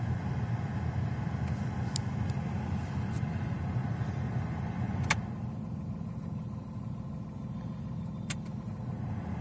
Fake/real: real